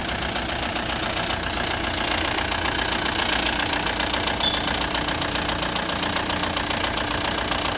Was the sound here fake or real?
real